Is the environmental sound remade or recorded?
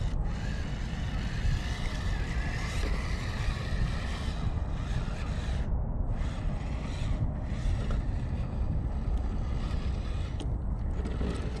recorded